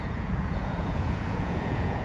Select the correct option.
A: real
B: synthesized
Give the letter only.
B